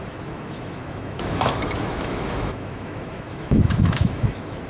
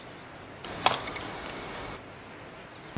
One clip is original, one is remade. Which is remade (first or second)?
first